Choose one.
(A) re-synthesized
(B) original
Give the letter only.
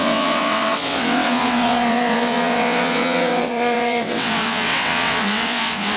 A